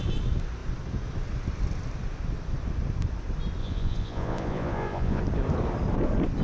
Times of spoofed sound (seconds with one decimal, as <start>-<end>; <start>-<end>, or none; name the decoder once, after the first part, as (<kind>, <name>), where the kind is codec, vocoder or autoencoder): 3.6-5.2 (vocoder, Vocos)